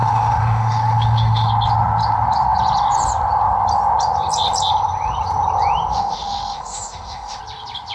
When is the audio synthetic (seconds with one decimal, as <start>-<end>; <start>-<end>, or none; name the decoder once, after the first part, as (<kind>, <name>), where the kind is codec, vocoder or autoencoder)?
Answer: 0.0-1.5 (autoencoder, DAC-VAE); 5.9-7.4